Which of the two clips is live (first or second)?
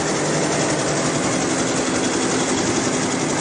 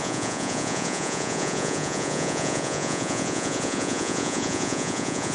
first